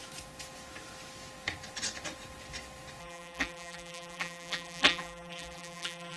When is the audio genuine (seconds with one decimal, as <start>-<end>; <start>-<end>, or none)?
0.0-3.0